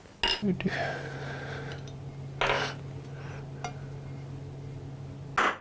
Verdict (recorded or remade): recorded